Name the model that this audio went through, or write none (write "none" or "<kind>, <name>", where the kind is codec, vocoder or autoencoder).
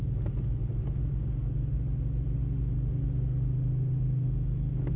none